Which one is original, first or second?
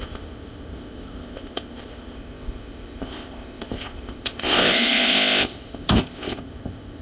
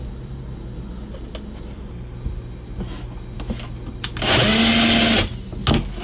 second